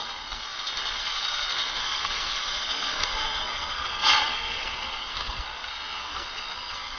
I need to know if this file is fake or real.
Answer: fake